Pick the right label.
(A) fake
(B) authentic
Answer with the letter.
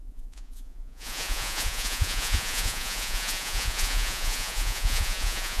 A